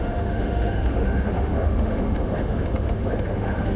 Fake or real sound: fake